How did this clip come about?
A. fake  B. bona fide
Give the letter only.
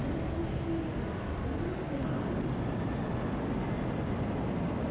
B